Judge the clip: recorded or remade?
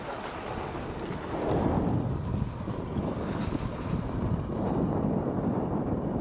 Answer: recorded